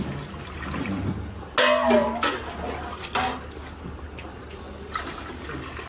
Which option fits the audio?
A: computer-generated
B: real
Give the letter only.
B